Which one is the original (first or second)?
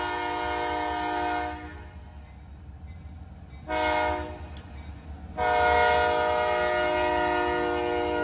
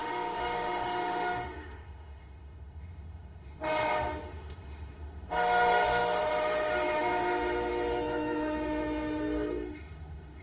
first